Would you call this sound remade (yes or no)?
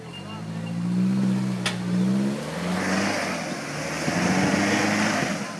no